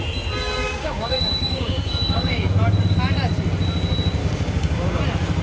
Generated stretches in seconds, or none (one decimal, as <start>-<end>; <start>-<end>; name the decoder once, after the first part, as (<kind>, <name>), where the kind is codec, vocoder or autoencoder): 0.6-2.5 (codec, DAC); 4.2-5.0